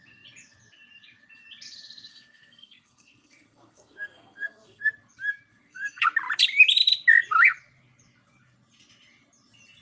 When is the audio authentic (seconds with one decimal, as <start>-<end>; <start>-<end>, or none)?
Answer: 0.0-2.1; 4.9-5.5; 6.0-9.8